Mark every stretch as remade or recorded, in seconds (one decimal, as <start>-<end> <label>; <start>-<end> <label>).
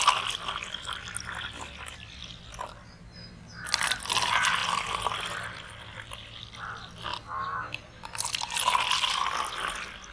0.0-10.1 recorded